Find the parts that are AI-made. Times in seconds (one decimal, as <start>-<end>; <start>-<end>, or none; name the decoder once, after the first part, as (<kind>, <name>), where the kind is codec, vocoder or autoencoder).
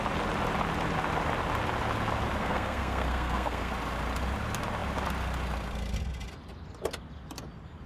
2.4-3.7 (codec, SNAC)